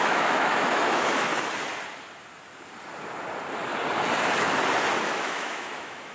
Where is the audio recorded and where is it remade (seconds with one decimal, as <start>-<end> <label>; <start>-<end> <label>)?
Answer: 0.0-1.3 remade; 1.3-5.0 recorded; 5.0-6.1 remade